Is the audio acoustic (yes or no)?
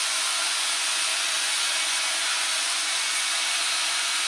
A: no